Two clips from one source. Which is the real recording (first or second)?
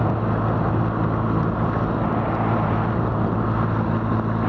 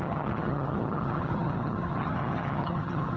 first